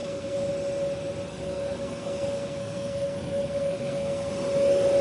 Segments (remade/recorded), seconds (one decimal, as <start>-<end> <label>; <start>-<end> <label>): 0.0-0.5 remade; 0.5-1.3 recorded; 1.3-4.3 remade; 4.3-5.0 recorded